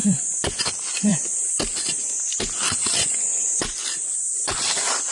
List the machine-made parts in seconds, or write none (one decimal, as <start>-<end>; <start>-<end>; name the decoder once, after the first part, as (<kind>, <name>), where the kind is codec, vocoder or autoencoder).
0.0-0.6 (vocoder, BigVGAN v2)